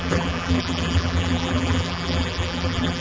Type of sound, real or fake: fake